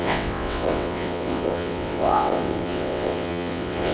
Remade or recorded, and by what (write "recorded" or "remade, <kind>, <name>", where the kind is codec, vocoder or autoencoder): remade, vocoder, WaveNeXt